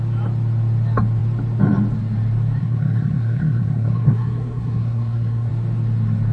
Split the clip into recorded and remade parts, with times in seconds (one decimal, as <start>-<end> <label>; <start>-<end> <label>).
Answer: 0.0-2.6 recorded; 2.6-5.5 remade; 5.5-6.3 recorded